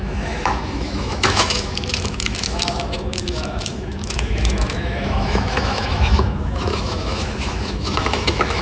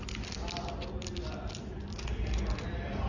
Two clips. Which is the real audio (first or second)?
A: second